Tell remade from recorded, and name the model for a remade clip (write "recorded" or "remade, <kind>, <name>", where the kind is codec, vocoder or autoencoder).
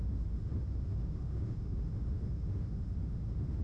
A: remade, autoencoder, DAC-VAE